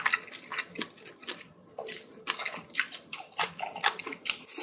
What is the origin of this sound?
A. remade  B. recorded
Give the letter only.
B